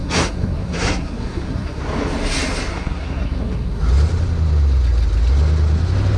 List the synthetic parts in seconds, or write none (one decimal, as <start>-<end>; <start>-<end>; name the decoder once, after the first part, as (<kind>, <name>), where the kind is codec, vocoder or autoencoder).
0.0-1.8 (codec, SNAC); 2.7-3.8